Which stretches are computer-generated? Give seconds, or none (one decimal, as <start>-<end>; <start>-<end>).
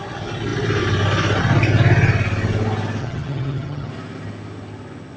3.0-3.9